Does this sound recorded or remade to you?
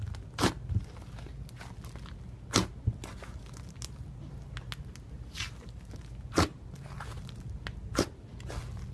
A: recorded